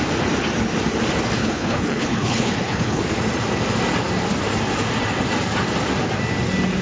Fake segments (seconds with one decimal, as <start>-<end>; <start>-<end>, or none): 1.4-3.0